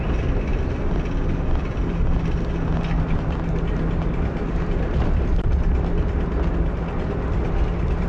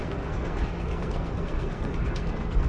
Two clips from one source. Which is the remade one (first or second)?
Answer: second